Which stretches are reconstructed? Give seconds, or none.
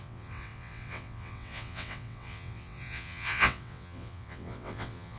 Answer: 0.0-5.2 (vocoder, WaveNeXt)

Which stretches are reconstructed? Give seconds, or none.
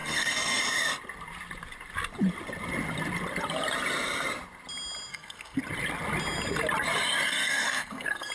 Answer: 0.0-0.6 (codec, SNAC); 5.1-5.6; 7.3-8.3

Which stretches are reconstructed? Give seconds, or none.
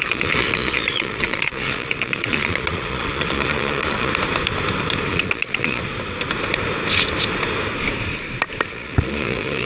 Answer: 0.0-4.1 (vocoder, Vocos); 5.1-5.8; 8.7-9.6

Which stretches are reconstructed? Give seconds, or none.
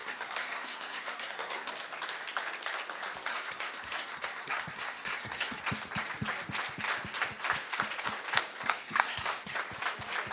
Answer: 0.0-1.7 (codec, SNAC); 3.3-5.6; 8.5-9.6